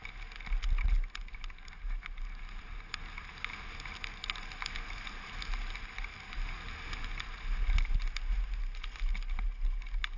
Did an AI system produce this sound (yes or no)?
no